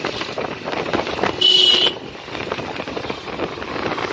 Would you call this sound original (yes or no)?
yes